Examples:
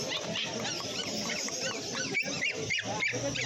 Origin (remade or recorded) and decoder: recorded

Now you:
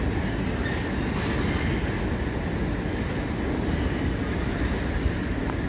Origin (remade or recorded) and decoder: recorded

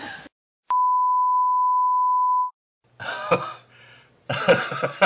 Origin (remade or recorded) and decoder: recorded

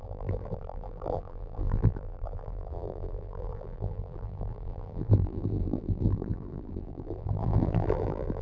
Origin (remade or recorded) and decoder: remade, vocoder, BigVGAN v2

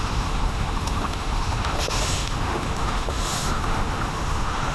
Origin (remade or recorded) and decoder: remade, autoencoder, DAC-VAE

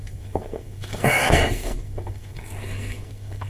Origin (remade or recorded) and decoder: remade, codec, SNAC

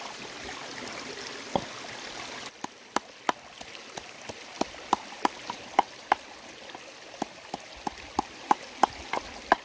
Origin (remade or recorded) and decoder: recorded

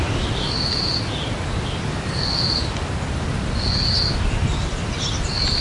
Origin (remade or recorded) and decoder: recorded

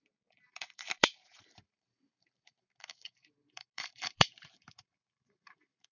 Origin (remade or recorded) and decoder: remade, vocoder, BigVGAN v2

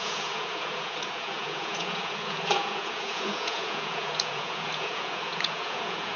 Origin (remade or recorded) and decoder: remade, vocoder, Vocos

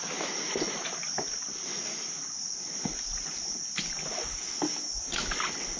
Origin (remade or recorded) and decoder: recorded